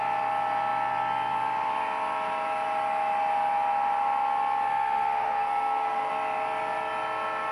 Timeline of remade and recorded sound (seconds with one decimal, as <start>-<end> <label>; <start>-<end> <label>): 0.0-4.7 recorded; 4.7-6.1 remade; 6.1-7.5 recorded